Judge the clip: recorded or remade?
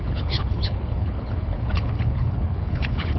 remade